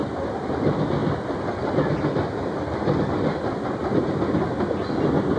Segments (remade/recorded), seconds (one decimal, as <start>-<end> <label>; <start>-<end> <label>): 0.0-5.4 recorded